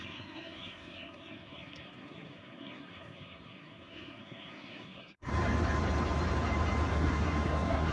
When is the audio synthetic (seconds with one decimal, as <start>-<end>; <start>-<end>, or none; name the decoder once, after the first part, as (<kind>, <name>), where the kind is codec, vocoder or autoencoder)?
0.0-5.3 (codec, SNAC); 6.9-7.9